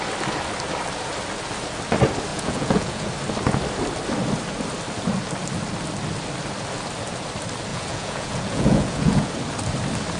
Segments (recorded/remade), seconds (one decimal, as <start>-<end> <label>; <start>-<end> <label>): 0.0-2.3 recorded; 2.3-3.1 remade; 3.1-7.7 recorded; 7.7-9.3 remade; 9.3-10.2 recorded